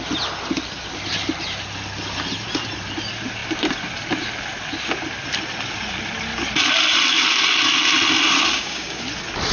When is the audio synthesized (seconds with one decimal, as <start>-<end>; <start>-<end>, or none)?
8.5-9.0

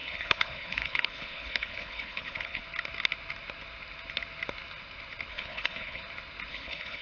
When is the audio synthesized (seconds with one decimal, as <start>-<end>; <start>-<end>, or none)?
0.0-2.6; 5.3-6.0; 6.5-7.0

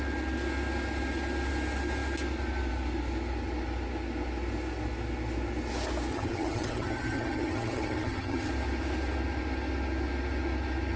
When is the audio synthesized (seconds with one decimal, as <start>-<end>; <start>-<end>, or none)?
6.1-8.5

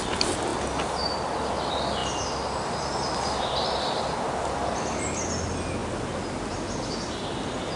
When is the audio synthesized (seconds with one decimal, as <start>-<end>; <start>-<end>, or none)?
none

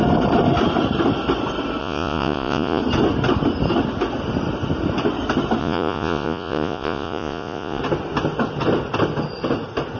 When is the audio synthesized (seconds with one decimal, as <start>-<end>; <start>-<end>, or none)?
1.8-2.8; 5.6-7.8

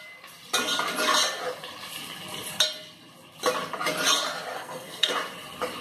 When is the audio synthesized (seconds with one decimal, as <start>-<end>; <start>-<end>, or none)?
4.5-5.1

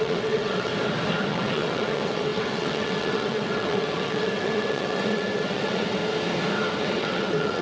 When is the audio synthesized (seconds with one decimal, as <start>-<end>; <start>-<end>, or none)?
0.0-0.7; 1.3-6.0; 6.8-7.6